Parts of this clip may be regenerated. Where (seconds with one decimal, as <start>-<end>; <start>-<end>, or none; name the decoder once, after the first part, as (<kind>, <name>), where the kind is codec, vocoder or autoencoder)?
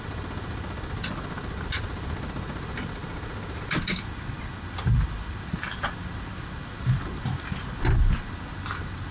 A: none